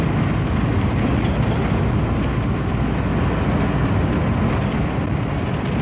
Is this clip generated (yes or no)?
no